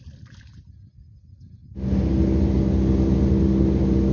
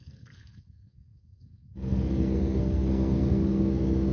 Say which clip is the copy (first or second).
second